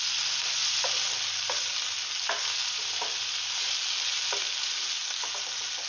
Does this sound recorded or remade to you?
recorded